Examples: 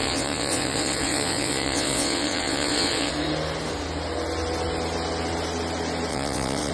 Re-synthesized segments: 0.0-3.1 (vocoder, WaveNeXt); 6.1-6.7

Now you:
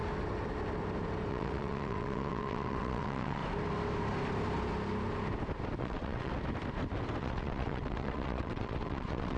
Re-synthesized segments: 1.3-3.4 (vocoder, WaveNeXt); 5.8-6.3; 7.2-9.4

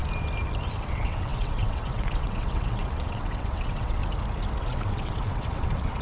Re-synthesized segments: 0.8-4.0 (vocoder, WaveNeXt); 4.6-6.0

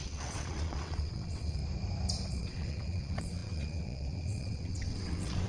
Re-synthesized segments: 0.0-1.6 (vocoder, WaveNeXt); 2.3-5.5

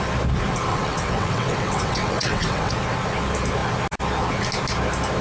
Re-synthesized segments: 0.7-2.7 (vocoder, WaveNeXt)

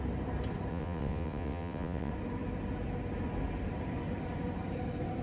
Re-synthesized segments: 0.7-2.1 (vocoder, WaveNeXt)